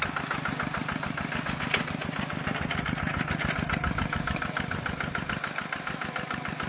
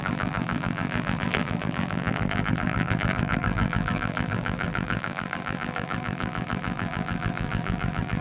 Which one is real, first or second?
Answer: first